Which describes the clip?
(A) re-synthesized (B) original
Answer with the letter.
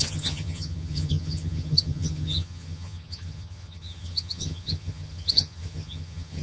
A